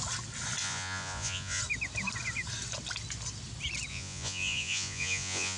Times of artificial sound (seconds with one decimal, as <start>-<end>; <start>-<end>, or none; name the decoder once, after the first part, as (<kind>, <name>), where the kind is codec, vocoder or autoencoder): 0.6-1.6 (vocoder, Vocos); 3.9-5.6